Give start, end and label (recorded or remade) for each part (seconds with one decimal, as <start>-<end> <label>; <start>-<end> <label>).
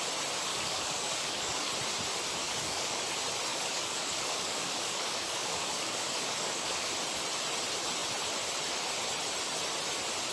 0.0-0.5 recorded; 0.5-1.7 remade; 1.7-2.4 recorded; 2.4-3.1 remade; 3.1-3.5 recorded; 3.5-6.9 remade; 6.9-10.3 recorded